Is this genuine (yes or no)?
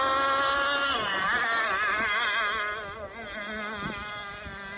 yes